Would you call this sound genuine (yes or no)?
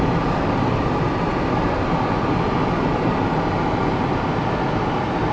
yes